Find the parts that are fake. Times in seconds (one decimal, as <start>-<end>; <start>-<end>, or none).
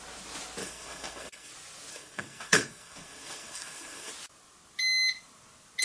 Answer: 0.6-1.5; 1.9-4.1